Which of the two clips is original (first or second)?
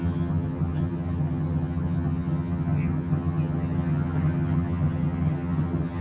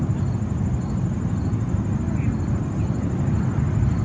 second